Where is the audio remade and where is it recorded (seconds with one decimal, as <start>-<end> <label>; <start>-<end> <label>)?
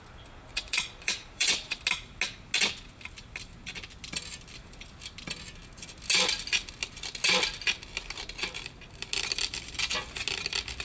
0.0-0.5 recorded; 0.5-1.8 remade; 1.8-10.8 recorded